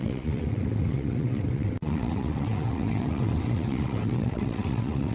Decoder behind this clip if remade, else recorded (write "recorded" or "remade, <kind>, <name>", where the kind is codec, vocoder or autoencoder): remade, vocoder, WaveNeXt